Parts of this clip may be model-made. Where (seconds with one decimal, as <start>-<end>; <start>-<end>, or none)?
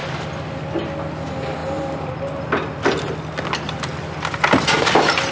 none